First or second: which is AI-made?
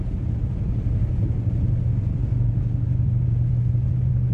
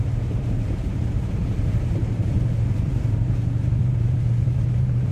second